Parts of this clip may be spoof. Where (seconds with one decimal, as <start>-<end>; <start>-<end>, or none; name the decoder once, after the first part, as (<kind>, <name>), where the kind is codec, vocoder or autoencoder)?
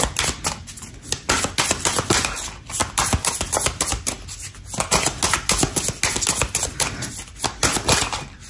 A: none